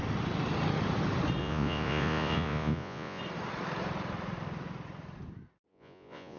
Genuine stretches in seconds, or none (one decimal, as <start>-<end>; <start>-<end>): 0.0-1.4; 3.2-5.7